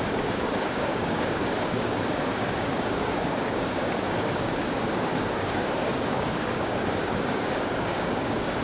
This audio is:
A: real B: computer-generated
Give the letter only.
B